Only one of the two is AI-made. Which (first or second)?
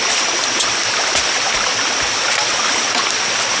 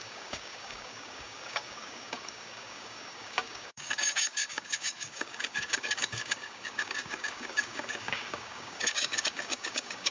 second